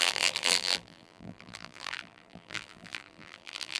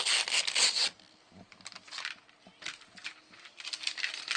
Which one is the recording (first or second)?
second